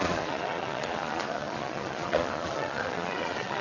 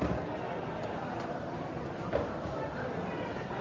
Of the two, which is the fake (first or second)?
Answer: first